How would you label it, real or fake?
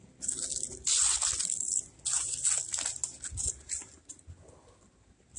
real